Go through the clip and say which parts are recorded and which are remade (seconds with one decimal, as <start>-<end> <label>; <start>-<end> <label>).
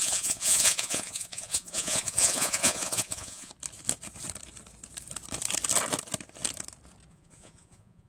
0.0-3.5 remade; 3.5-7.1 recorded; 7.1-8.1 remade